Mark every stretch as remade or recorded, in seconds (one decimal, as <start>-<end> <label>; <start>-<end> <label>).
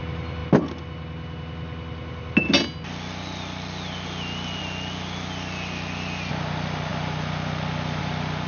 0.0-8.5 recorded